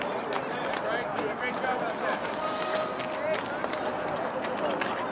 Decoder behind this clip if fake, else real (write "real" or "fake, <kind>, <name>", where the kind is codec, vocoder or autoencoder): real